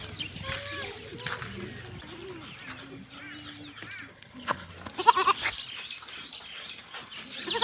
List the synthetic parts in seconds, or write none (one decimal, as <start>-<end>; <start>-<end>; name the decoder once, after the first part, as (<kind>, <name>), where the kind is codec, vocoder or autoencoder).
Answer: 4.1-4.7 (codec, HILCodec)